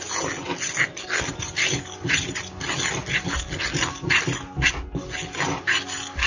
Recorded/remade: recorded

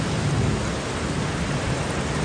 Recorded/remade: recorded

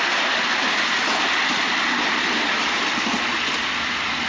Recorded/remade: recorded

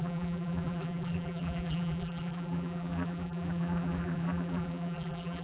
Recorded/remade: remade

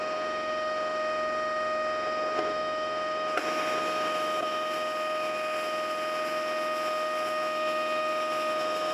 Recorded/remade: remade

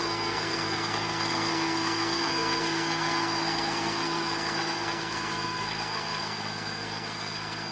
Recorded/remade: remade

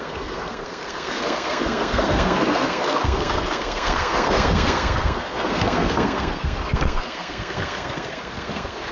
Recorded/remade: remade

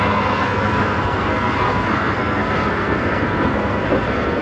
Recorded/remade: remade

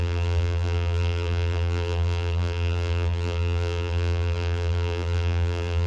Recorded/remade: remade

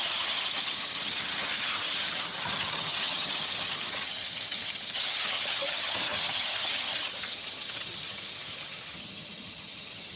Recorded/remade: remade